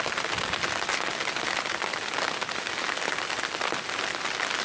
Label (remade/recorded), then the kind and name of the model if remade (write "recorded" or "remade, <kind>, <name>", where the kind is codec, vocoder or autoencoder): recorded